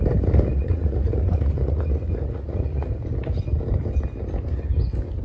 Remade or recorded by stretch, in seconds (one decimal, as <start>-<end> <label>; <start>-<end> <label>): 0.0-0.5 recorded; 0.5-2.9 remade; 2.9-5.2 recorded

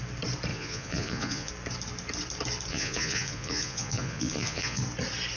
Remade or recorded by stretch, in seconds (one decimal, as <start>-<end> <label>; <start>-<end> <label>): 0.0-0.5 recorded; 0.5-1.5 remade; 1.5-2.7 recorded; 2.7-4.8 remade; 4.8-5.4 recorded

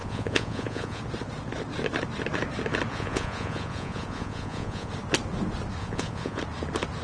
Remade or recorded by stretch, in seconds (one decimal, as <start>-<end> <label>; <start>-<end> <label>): 0.0-1.0 remade; 1.0-2.9 recorded; 2.9-4.9 remade; 4.9-5.8 recorded; 5.8-6.4 remade; 6.4-7.0 recorded

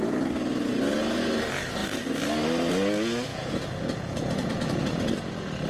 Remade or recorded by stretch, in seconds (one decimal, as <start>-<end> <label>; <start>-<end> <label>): 0.0-3.3 recorded; 3.3-4.8 remade; 4.8-5.7 recorded